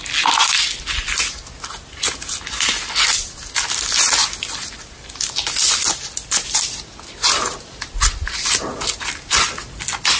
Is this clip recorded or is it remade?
recorded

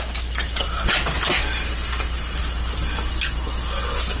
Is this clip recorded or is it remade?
recorded